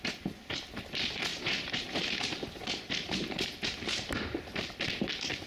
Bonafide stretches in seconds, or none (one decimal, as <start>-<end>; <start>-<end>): 0.0-1.3; 4.6-5.5